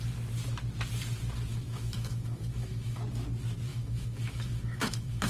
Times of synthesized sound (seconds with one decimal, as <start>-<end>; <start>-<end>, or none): 1.5-3.0; 3.7-5.3